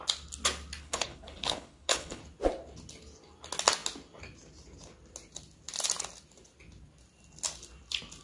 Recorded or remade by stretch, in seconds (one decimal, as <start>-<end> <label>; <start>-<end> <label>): 0.0-0.8 recorded; 0.8-2.2 remade; 2.2-8.2 recorded